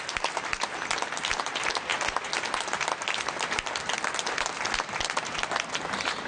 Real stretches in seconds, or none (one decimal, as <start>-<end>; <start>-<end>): 0.0-6.3